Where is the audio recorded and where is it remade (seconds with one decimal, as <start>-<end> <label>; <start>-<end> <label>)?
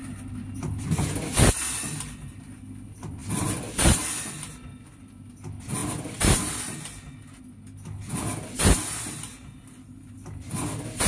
0.0-11.1 recorded